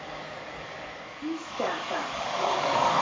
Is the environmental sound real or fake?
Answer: fake